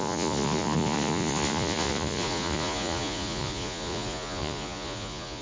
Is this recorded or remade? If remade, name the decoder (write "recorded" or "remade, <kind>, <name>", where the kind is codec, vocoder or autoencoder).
remade, vocoder, Vocos